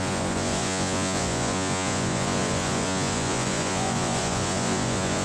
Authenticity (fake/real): fake